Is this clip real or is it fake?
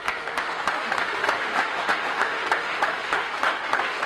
fake